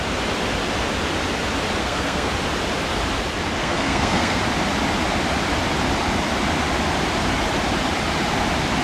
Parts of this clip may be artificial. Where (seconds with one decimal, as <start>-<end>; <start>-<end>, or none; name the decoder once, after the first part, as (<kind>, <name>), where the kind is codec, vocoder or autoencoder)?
1.8-2.3 (codec, SNAC); 3.6-4.4